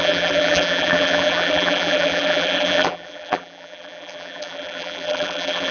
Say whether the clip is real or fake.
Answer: fake